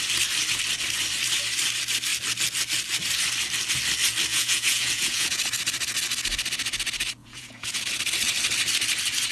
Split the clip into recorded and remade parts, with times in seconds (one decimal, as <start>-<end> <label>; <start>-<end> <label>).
0.0-4.3 recorded; 4.3-5.4 remade; 5.4-7.2 recorded; 7.2-7.8 remade; 7.8-9.3 recorded